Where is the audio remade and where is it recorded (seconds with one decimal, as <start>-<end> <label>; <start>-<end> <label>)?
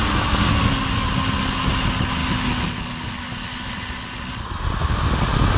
0.0-5.6 recorded